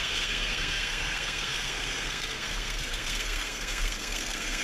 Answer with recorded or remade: remade